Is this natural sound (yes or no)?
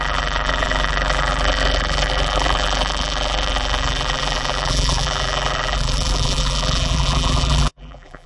no